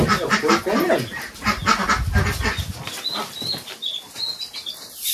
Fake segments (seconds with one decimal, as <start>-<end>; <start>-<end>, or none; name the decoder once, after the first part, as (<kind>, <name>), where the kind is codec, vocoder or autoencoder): 0.0-1.6 (vocoder, BigVGAN v2); 3.2-5.1